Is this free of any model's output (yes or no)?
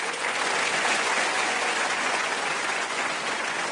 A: no